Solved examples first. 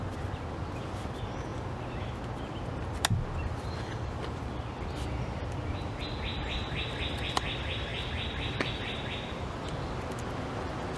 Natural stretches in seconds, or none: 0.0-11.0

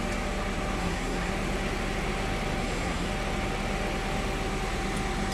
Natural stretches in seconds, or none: 0.0-0.8; 1.3-2.6; 3.1-5.3

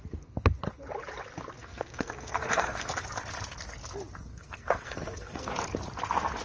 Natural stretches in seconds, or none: 0.0-1.6; 2.9-4.3; 5.5-6.4